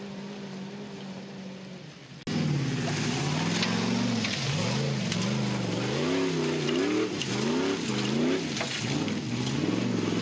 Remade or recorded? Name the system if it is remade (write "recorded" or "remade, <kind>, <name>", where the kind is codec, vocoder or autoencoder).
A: recorded